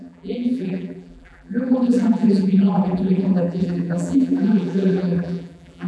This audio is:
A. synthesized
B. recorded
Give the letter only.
A